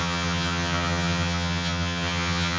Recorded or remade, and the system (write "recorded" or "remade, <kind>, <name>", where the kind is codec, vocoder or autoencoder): remade, vocoder, HiFi-GAN